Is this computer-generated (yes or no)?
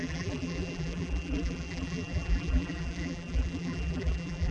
yes